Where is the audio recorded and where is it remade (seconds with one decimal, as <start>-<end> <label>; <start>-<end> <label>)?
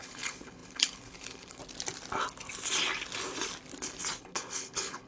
0.0-1.6 remade; 1.6-4.2 recorded; 4.2-5.1 remade